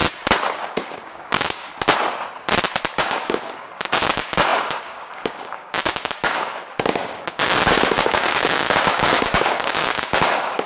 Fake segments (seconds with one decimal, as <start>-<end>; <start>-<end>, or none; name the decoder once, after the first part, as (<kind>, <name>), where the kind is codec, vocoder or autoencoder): 0.7-1.7 (codec, DAC); 2.9-10.7